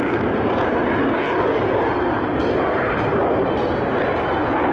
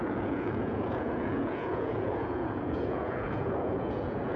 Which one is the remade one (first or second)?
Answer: second